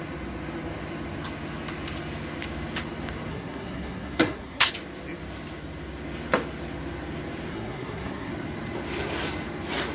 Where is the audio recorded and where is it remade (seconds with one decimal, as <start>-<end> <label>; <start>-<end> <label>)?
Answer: 0.0-3.3 recorded; 3.3-4.7 remade; 4.7-7.5 recorded; 7.5-8.3 remade; 8.3-9.9 recorded